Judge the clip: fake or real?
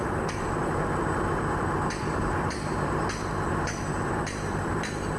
fake